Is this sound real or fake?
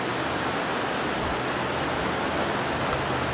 real